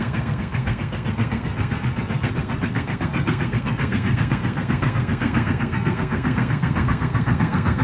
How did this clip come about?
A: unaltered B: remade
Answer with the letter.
B